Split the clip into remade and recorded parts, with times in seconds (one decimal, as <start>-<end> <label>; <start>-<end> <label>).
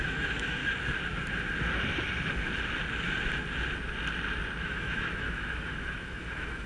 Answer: 0.0-0.6 remade; 0.6-4.6 recorded; 4.6-6.7 remade